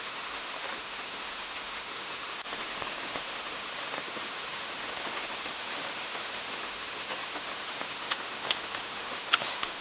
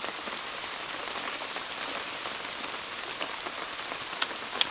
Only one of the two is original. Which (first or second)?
second